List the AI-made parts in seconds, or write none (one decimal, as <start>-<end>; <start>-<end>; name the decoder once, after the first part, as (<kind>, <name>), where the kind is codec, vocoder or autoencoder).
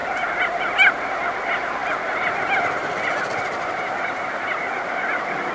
none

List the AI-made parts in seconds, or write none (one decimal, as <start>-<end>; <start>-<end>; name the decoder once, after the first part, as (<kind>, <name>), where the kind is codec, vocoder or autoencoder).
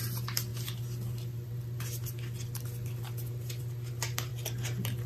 none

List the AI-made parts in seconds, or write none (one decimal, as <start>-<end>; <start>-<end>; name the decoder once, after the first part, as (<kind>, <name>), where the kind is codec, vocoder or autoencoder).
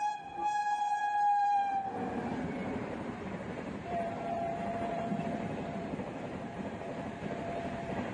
0.0-0.4 (vocoder, BigVGAN v2); 1.0-8.1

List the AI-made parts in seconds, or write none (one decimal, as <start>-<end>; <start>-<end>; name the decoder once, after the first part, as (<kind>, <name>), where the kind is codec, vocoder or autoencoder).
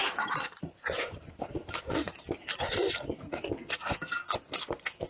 0.0-3.1 (vocoder, BigVGAN v2)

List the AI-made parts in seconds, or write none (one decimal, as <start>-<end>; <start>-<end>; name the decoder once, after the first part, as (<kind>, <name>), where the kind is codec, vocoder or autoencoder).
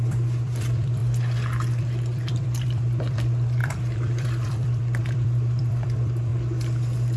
0.0-1.0 (vocoder, BigVGAN v2); 1.8-6.3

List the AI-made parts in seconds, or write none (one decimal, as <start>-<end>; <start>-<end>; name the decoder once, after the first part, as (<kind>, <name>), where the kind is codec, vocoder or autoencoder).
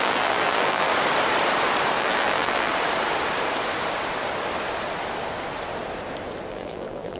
0.0-0.9 (vocoder, BigVGAN v2); 2.0-2.7; 6.5-7.2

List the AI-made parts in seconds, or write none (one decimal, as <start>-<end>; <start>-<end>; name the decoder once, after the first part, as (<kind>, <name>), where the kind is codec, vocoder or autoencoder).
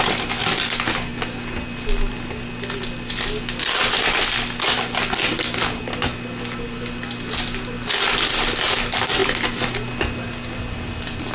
none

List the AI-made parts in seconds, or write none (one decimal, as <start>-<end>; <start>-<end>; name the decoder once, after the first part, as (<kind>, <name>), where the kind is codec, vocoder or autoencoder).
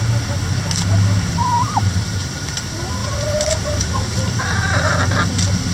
1.3-2.6 (vocoder, BigVGAN v2); 3.0-4.4